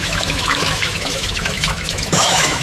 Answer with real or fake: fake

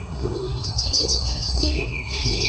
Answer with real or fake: fake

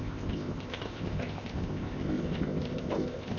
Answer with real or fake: fake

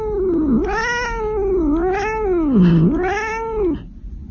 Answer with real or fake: real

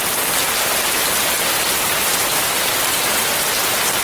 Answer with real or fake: real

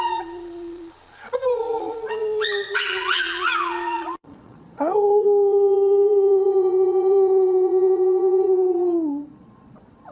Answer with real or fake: fake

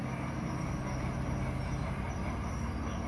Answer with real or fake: real